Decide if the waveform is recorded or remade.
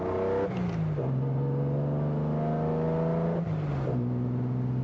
recorded